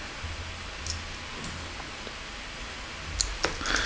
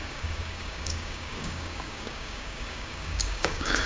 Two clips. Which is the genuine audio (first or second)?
first